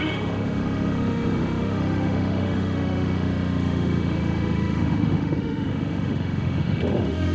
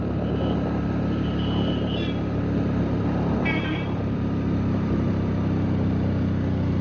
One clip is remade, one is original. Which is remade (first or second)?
first